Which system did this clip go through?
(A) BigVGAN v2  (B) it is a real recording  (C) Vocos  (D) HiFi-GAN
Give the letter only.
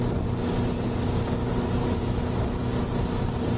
B